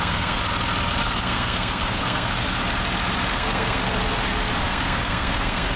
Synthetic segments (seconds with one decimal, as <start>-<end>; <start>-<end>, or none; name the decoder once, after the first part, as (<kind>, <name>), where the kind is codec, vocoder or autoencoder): 0.0-0.4 (codec, SNAC); 1.0-2.6; 3.3-3.8; 4.6-5.8